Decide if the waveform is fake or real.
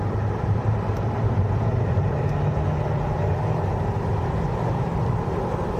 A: real